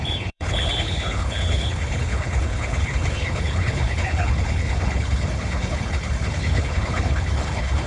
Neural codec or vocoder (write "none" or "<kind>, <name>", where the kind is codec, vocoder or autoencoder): codec, HILCodec